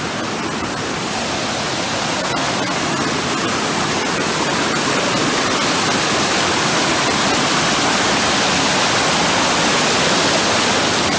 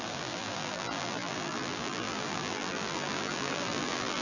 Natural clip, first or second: first